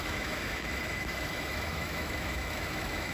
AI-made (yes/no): yes